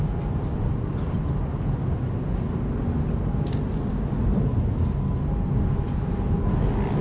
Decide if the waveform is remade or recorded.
recorded